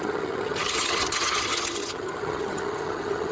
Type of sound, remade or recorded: remade